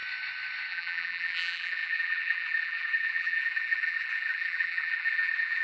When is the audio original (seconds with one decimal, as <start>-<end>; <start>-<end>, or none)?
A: 0.0-0.7